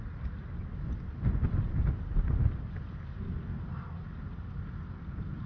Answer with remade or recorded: recorded